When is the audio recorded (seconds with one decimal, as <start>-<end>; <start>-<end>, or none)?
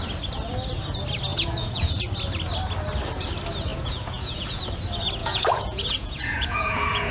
0.0-1.3; 2.0-3.7; 4.6-5.2